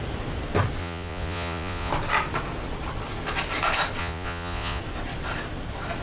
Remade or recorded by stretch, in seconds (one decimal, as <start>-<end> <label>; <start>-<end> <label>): 0.0-0.8 recorded; 0.8-1.9 remade; 1.9-4.0 recorded; 4.0-4.8 remade; 4.8-6.0 recorded